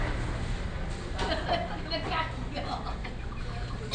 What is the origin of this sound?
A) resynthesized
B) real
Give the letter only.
B